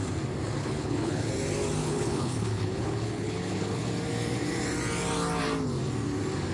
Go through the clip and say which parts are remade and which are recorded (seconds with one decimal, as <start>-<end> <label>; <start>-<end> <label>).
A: 0.0-0.6 recorded; 0.6-1.3 remade; 1.3-1.8 recorded; 1.8-3.9 remade; 3.9-6.5 recorded